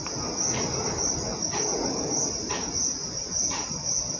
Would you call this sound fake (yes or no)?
no